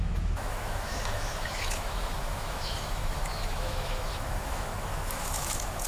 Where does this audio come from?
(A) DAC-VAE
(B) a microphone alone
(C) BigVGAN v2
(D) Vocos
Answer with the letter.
A